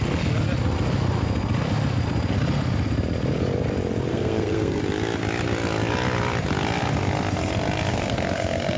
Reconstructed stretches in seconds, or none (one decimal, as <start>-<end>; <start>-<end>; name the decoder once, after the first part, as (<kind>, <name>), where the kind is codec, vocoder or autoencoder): 4.1-4.8 (codec, SNAC); 7.9-8.8